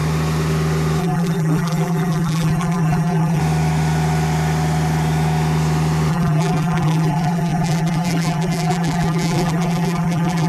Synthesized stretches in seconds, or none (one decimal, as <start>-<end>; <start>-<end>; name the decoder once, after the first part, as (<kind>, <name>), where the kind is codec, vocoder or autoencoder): 1.0-3.4 (vocoder, BigVGAN v2); 6.1-10.5